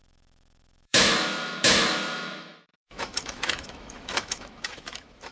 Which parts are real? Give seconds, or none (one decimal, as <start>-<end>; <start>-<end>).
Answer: none